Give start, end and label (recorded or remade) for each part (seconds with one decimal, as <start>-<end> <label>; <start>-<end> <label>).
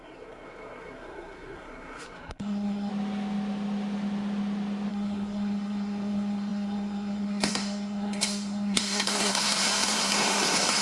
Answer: 0.0-2.9 remade; 2.9-4.9 recorded; 4.9-10.8 remade